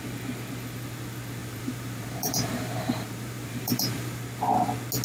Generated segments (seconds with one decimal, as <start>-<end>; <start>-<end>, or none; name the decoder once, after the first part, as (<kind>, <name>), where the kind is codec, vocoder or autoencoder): 1.4-4.2 (vocoder, BigVGAN v2)